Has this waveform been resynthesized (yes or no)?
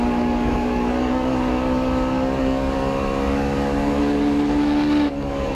yes